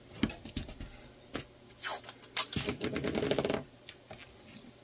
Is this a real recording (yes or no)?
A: yes